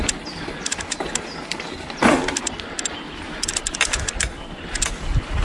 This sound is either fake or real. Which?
real